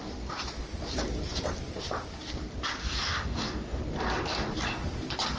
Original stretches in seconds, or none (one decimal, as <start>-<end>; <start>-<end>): 0.0-2.8; 3.8-5.4